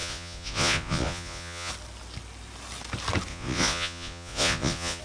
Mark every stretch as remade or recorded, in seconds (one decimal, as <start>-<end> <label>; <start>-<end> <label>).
0.0-1.7 remade; 1.7-3.3 recorded; 3.3-5.0 remade